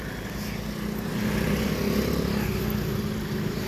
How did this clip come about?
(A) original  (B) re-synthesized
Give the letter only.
A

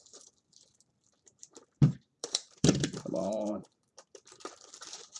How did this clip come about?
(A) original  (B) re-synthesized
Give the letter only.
B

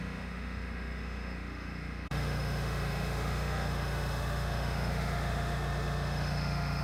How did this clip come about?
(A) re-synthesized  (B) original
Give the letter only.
A